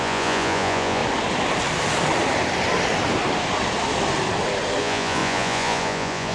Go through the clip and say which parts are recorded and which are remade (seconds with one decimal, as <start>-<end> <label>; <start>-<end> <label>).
0.0-1.0 remade; 1.0-4.8 recorded; 4.8-6.3 remade